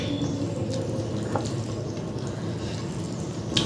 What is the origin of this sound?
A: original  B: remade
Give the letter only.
A